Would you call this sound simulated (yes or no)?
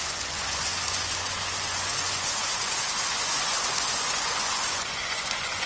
yes